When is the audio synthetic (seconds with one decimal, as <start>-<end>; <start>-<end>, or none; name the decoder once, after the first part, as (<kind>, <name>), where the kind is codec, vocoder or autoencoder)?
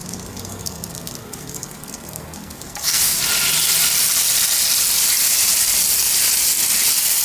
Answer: 0.0-3.2 (codec, SNAC)